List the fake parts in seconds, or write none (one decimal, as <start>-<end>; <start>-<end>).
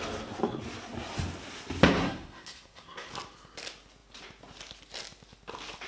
2.0-3.1